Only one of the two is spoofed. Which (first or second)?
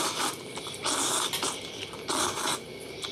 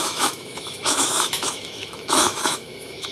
second